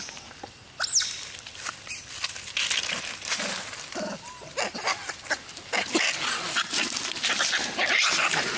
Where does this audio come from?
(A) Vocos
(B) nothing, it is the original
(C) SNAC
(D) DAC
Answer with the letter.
B